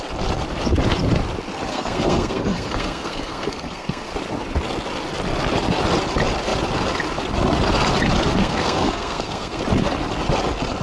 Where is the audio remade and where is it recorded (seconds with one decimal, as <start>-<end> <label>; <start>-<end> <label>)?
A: 0.0-1.7 recorded; 1.7-4.1 remade; 4.1-8.4 recorded; 8.4-9.6 remade; 9.6-10.8 recorded